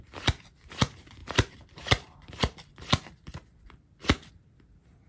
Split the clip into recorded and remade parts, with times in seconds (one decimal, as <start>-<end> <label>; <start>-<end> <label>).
0.0-1.2 recorded; 1.2-4.3 remade; 4.3-5.1 recorded